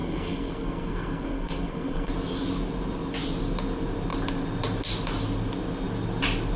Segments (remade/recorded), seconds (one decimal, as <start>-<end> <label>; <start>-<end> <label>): 0.0-2.1 remade; 2.1-6.6 recorded